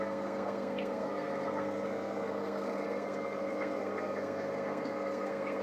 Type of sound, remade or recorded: remade